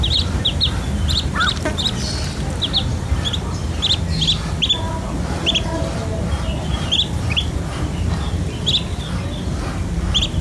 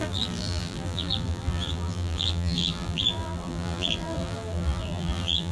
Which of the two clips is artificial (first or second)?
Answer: second